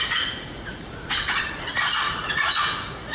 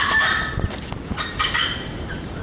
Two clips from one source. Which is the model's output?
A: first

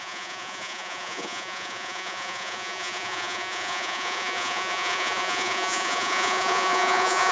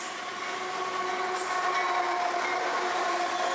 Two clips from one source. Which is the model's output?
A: first